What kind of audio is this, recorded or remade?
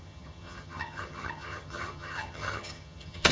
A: remade